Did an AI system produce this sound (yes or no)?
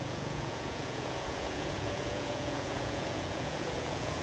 yes